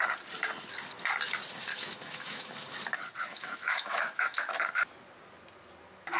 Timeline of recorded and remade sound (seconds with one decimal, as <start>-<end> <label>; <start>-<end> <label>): 0.0-1.7 recorded; 1.7-2.5 remade; 2.5-3.3 recorded; 3.3-4.5 remade; 4.5-6.2 recorded